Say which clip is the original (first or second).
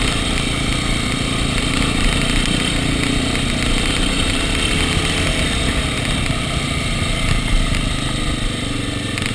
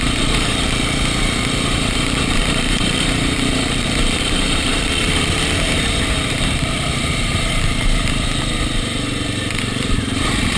first